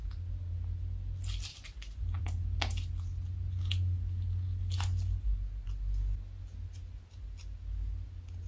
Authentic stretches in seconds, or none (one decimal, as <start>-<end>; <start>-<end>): 0.0-8.5